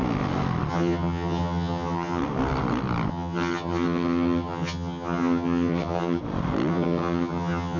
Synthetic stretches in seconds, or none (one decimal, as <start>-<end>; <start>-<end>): 0.7-2.2; 3.1-6.2; 6.7-7.8